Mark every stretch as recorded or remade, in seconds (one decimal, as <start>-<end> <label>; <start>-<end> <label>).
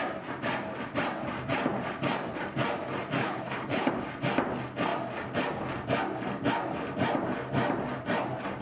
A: 0.0-3.2 recorded; 3.2-3.9 remade; 3.9-8.6 recorded